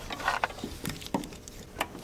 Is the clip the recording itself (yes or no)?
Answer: yes